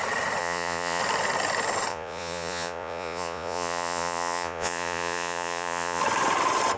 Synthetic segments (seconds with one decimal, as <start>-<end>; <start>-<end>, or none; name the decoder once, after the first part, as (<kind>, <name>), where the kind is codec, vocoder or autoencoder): 0.4-1.0 (vocoder, Vocos); 1.9-6.0